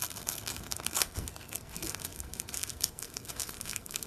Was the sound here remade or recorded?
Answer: remade